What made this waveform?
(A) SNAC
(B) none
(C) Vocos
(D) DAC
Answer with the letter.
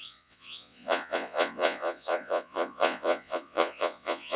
C